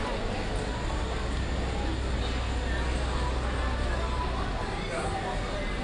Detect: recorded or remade recorded